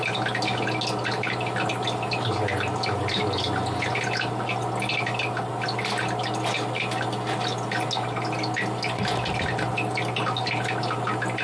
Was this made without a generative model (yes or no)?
yes